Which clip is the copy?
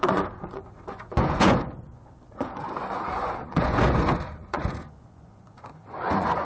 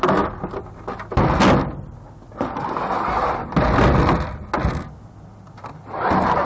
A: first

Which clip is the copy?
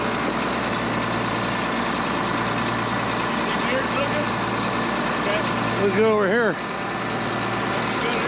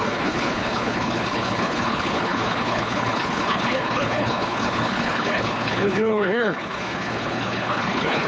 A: second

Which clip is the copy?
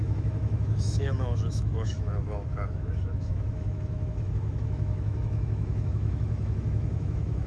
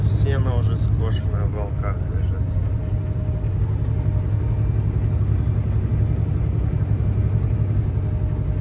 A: first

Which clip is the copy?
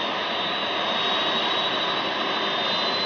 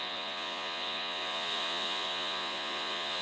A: second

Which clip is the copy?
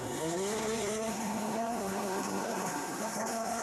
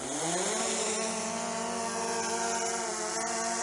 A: first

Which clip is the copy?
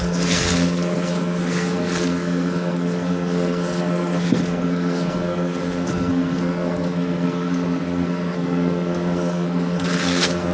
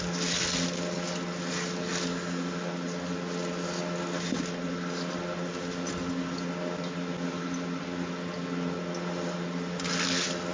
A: first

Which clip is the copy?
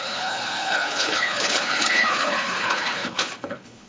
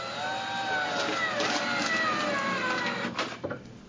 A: first